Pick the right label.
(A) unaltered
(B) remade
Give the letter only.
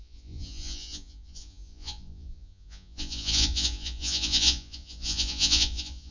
B